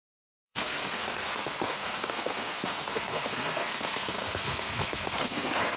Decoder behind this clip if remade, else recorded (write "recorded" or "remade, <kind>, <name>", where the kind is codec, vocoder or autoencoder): remade, codec, SNAC